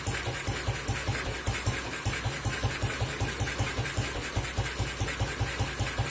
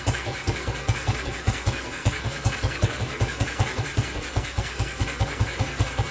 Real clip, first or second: first